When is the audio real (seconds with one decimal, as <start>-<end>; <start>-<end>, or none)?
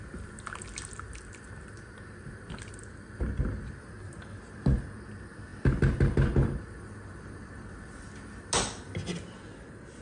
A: 0.0-10.0